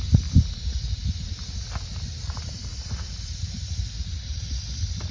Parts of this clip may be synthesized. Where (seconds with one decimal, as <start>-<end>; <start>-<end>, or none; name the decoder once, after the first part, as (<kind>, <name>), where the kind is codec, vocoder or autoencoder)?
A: 0.0-1.0 (vocoder, BigVGAN v2); 1.9-2.7